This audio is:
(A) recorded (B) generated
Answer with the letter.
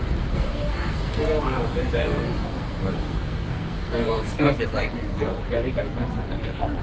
B